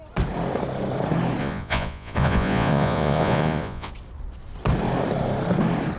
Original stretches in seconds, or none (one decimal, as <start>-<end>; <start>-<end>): 0.0-1.4; 3.9-6.0